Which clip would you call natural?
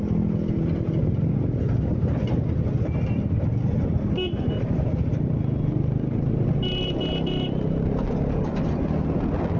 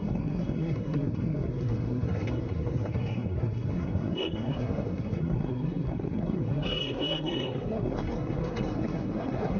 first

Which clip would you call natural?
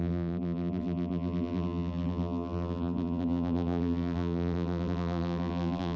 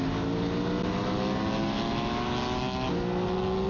second